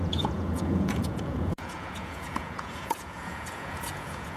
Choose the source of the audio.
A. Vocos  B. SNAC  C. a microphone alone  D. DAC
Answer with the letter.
A